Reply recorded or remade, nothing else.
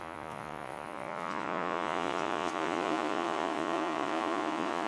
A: remade